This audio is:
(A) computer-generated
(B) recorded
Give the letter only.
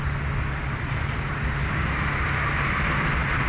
B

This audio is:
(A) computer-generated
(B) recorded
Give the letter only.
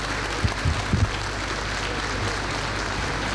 B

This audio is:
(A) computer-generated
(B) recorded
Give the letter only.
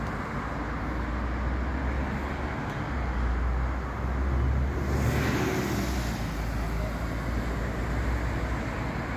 B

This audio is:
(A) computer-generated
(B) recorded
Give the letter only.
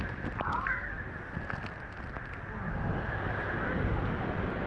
B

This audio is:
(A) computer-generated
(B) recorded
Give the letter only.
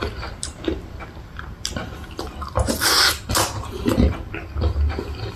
B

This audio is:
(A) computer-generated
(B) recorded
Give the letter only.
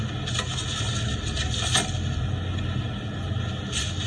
B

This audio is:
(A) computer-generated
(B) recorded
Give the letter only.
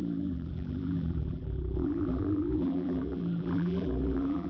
A